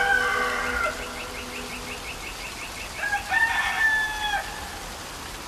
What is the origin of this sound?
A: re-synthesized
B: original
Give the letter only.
B